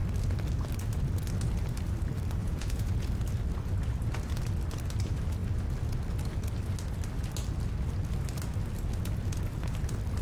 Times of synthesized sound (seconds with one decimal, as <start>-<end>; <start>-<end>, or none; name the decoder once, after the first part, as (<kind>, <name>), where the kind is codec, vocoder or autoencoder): 2.4-3.1 (vocoder, Vocos)